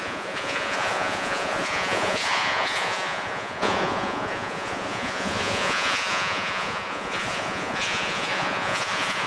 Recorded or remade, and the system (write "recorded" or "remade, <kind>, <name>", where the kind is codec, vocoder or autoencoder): remade, vocoder, Vocos